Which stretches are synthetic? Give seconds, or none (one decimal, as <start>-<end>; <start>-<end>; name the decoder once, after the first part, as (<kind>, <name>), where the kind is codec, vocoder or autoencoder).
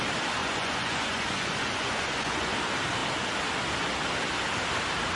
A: 0.4-2.5 (vocoder, Vocos)